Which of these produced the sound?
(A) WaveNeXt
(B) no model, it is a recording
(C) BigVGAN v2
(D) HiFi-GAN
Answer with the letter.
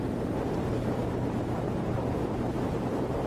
C